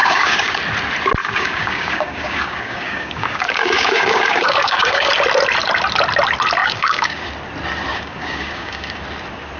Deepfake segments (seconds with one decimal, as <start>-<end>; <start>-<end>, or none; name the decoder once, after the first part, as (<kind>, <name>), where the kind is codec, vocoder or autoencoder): 0.0-0.6 (codec, DAC); 1.2-5.1; 6.6-7.3; 7.9-9.0